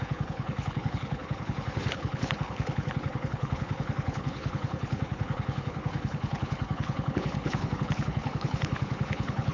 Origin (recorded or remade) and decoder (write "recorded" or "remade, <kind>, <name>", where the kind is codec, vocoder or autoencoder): remade, codec, HILCodec